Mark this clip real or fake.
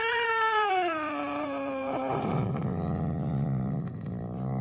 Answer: fake